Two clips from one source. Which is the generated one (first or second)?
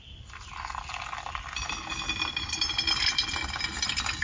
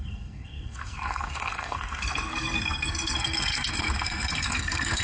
second